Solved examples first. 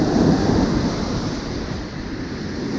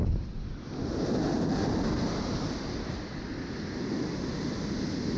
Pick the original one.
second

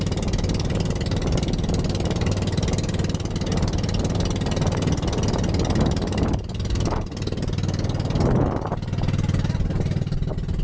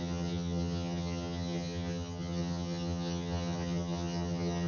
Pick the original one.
first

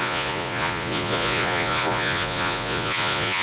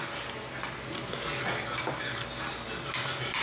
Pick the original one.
second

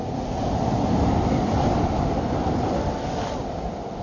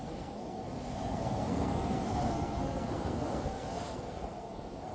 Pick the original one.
first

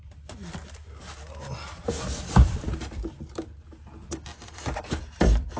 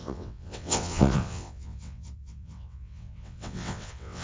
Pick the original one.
first